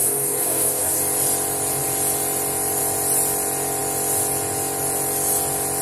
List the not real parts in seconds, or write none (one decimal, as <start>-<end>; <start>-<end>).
0.0-1.0